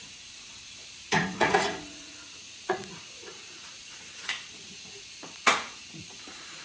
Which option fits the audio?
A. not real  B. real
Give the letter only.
A